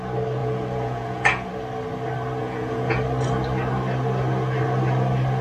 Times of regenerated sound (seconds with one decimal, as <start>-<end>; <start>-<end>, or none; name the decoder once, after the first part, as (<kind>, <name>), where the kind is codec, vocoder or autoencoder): 0.4-1.5 (vocoder, Vocos); 2.4-3.0